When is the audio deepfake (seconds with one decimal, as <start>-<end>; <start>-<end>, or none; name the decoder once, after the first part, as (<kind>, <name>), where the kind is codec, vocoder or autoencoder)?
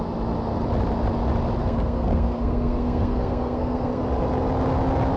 1.6-4.0 (codec, SNAC)